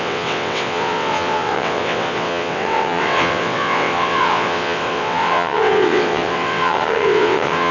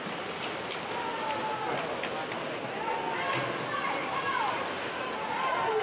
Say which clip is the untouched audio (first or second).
second